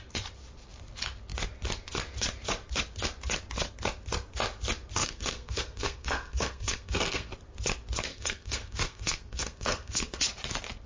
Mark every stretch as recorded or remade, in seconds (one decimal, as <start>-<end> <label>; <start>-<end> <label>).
0.0-5.0 recorded; 5.0-7.3 remade; 7.3-8.1 recorded; 8.1-10.2 remade; 10.2-10.9 recorded

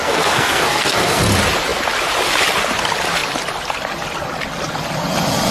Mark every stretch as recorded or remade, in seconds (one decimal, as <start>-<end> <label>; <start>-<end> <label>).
0.0-1.2 remade; 1.2-5.5 recorded

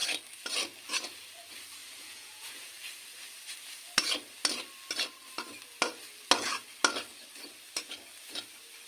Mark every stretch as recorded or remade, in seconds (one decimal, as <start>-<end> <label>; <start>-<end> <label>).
0.0-1.8 recorded; 1.8-2.7 remade; 2.7-8.9 recorded

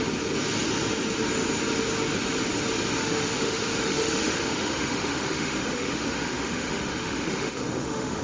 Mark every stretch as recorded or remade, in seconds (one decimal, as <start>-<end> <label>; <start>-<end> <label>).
0.0-3.0 recorded; 3.0-8.2 remade

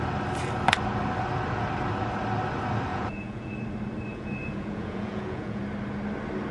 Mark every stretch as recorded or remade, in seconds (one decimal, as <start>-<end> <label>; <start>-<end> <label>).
0.0-2.9 recorded; 2.9-3.5 remade; 3.5-4.1 recorded; 4.1-5.6 remade; 5.6-6.5 recorded

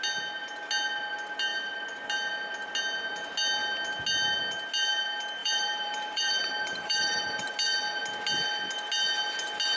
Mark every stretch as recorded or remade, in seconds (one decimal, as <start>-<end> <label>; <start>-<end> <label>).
0.0-5.4 recorded; 5.4-7.5 remade; 7.5-9.8 recorded

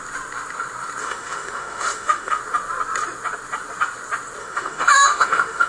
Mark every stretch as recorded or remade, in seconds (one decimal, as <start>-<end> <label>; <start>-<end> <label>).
0.0-1.0 recorded; 1.0-2.4 remade; 2.4-4.4 recorded; 4.4-5.7 remade